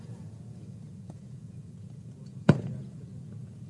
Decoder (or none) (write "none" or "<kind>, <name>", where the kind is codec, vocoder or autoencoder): vocoder, Vocos